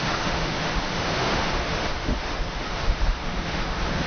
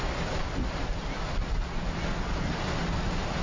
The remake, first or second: first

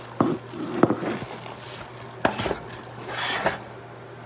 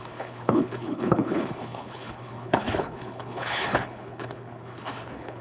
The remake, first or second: second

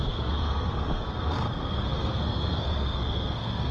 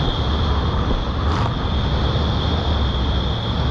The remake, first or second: first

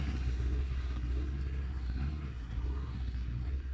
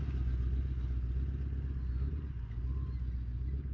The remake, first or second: first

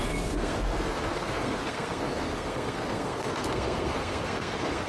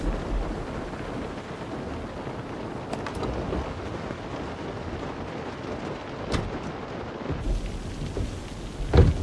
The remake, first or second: first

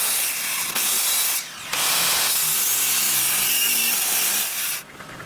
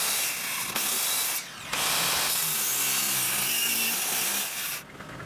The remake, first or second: first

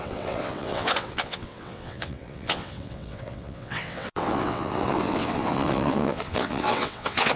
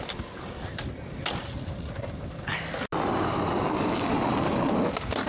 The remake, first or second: first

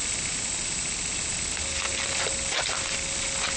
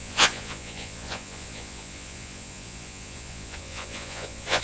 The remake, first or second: second